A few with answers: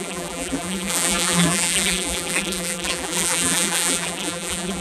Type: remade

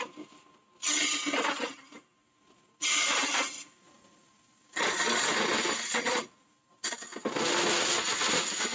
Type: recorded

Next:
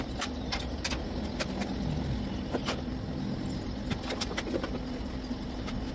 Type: recorded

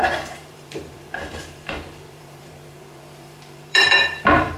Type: remade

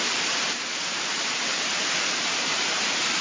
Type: remade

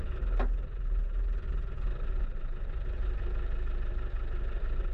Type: recorded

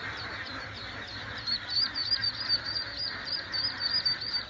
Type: remade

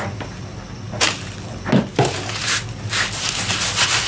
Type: recorded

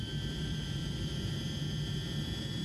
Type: remade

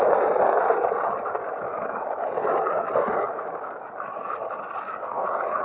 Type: recorded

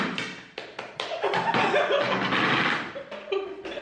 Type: recorded